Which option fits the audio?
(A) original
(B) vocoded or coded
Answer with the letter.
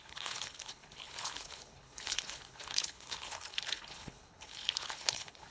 B